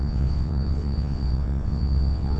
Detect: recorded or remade remade